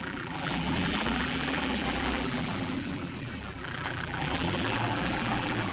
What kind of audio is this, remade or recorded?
remade